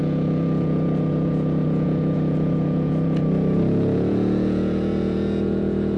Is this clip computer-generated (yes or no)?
yes